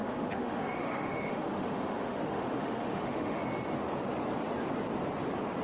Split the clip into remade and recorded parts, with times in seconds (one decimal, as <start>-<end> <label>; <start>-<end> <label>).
0.0-3.4 remade; 3.4-5.6 recorded